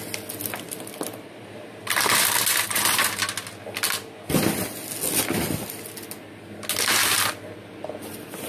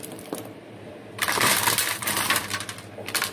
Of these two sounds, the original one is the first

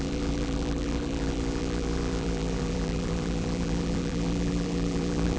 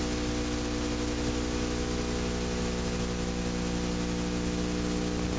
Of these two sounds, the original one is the second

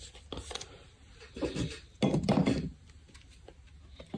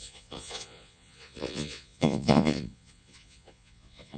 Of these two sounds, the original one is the first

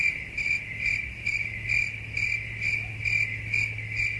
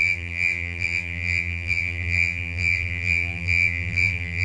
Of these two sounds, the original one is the first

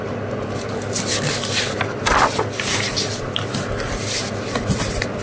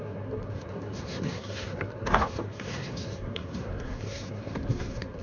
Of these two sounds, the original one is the first